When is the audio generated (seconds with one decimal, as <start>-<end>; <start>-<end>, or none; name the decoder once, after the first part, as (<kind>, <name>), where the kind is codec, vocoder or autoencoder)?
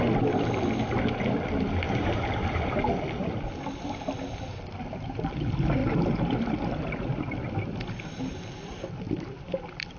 none